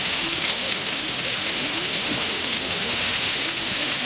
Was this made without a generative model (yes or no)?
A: no